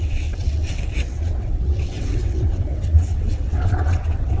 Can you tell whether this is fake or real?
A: fake